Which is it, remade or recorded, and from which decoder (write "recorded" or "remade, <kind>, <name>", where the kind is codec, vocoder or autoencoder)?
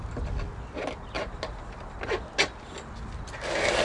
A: recorded